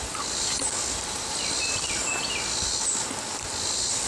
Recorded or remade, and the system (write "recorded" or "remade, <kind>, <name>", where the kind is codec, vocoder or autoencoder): recorded